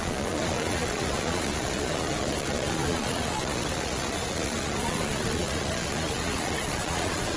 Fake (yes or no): yes